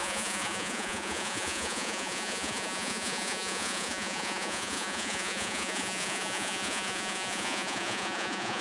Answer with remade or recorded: remade